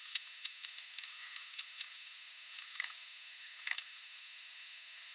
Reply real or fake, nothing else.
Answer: fake